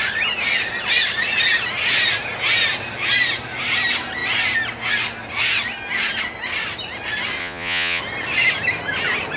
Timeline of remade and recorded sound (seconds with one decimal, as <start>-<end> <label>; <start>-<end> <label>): 0.0-7.4 recorded; 7.4-8.0 remade; 8.0-9.4 recorded